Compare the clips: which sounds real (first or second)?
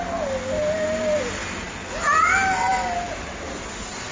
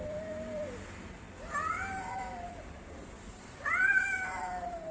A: first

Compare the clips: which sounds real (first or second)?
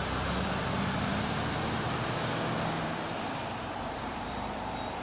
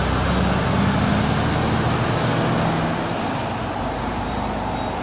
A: second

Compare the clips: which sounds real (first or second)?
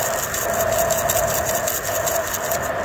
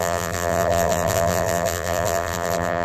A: first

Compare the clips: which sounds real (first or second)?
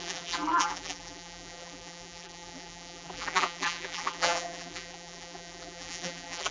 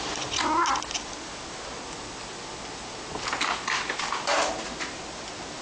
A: second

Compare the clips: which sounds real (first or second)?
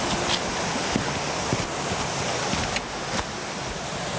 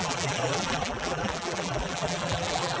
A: first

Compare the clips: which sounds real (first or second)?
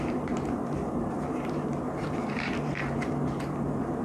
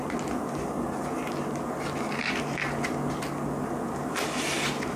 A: second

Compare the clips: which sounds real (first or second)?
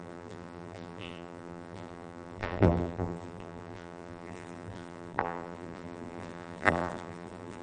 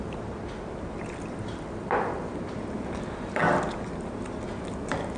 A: second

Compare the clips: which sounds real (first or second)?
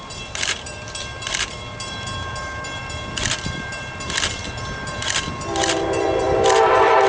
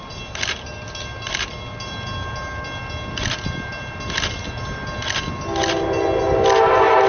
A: second